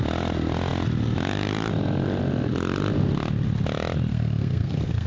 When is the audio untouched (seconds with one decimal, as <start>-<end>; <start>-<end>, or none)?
0.0-4.1